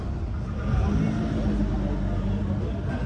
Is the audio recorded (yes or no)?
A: yes